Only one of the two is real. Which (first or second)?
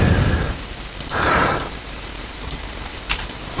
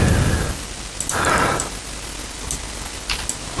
second